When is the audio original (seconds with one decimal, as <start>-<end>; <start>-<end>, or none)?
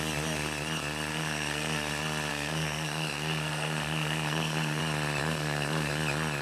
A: 0.0-1.1; 1.9-2.3; 4.8-5.2; 5.9-6.4